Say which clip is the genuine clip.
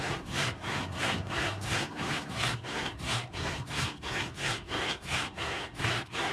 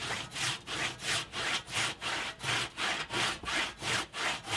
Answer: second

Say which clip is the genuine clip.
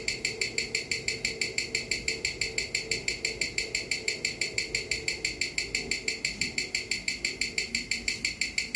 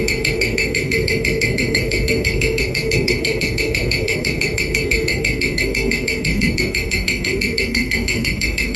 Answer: first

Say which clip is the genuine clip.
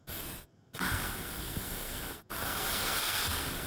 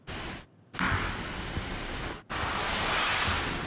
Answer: second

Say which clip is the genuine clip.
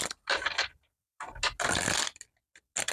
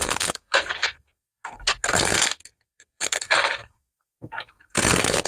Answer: first